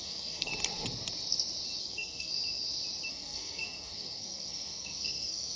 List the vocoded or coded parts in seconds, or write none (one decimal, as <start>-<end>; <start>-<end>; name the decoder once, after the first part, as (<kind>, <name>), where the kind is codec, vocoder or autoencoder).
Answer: 0.0-0.5 (codec, SNAC); 1.8-2.3; 3.1-5.6